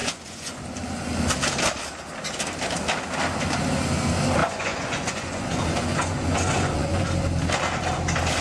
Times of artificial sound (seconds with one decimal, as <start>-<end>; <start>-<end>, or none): 0.0-0.6; 4.4-7.1

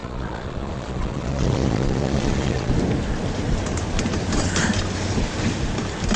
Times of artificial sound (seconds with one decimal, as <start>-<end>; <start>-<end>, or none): 0.0-2.7

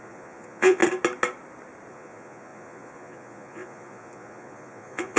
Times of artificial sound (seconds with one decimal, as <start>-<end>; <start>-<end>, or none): 0.0-0.8; 1.9-5.2

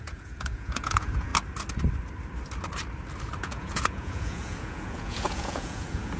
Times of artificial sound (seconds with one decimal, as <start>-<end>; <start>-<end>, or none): 0.0-1.3; 3.4-6.2

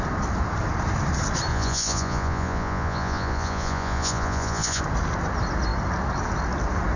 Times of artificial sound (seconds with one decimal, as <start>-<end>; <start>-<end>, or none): 1.5-4.8